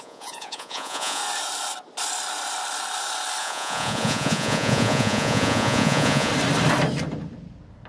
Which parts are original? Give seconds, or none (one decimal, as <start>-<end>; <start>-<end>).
1.2-3.4; 6.3-7.9